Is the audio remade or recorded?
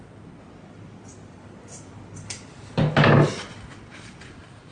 recorded